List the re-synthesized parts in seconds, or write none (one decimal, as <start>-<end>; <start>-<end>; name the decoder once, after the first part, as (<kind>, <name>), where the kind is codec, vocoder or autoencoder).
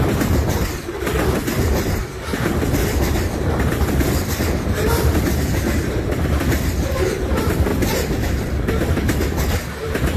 0.0-7.7 (vocoder, BigVGAN v2)